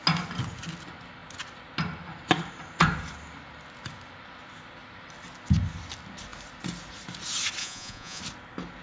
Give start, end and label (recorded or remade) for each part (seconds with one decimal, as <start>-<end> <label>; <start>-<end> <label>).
0.0-7.6 recorded; 7.6-8.2 remade; 8.2-8.8 recorded